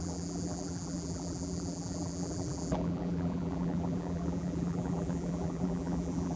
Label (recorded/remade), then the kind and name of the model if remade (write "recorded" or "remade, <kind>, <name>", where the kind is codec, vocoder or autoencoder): remade, vocoder, BigVGAN v2